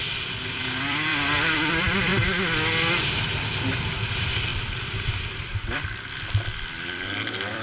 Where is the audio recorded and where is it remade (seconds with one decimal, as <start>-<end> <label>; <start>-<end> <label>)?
0.0-1.1 remade; 1.1-1.7 recorded; 1.7-2.1 remade; 2.1-3.9 recorded; 3.9-4.5 remade; 4.5-6.2 recorded; 6.2-7.6 remade